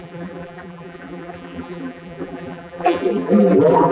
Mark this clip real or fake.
fake